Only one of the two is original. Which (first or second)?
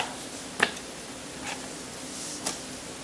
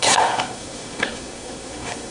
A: first